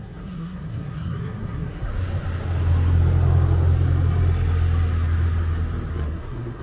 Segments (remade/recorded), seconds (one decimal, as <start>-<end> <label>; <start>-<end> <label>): 0.0-1.9 remade; 1.9-5.9 recorded; 5.9-6.6 remade